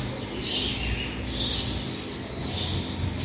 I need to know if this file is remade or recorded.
recorded